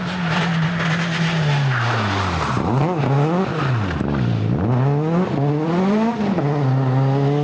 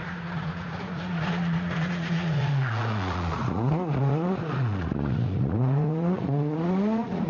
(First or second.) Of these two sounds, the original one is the first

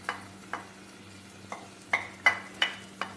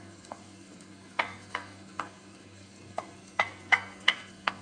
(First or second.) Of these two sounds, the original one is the first